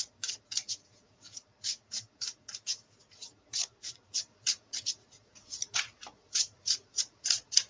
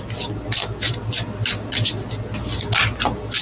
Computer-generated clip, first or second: first